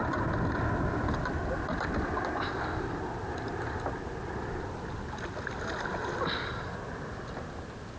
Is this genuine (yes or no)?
yes